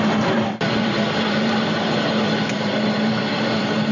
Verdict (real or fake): fake